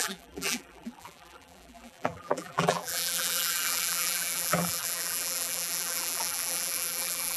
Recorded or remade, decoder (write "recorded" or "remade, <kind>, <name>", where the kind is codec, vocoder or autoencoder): remade, vocoder, BigVGAN v2